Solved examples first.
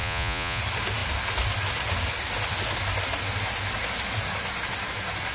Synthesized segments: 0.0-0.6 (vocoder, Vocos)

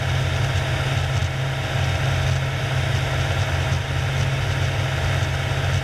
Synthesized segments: none

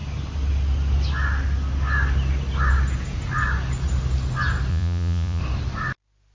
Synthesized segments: 4.7-5.4 (vocoder, Vocos)

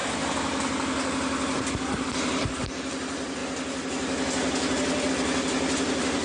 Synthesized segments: 1.7-3.4 (vocoder, BigVGAN v2); 5.1-6.2

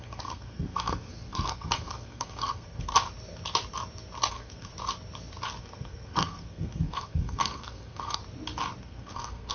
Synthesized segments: 0.0-2.9 (codec, SNAC); 4.3-4.7; 5.6-8.2; 8.8-9.5

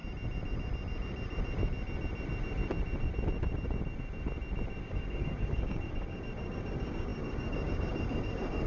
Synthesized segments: 4.8-8.7 (codec, DAC)